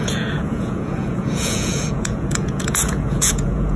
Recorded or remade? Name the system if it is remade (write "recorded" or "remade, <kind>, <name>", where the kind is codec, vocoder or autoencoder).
remade, vocoder, Vocos